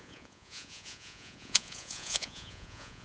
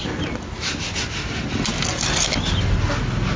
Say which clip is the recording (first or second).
second